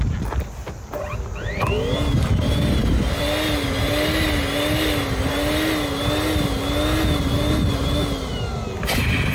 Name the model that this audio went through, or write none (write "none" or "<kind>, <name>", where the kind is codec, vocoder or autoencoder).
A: none